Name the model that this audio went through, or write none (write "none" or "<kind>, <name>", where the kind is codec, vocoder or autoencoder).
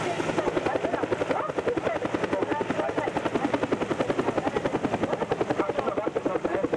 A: none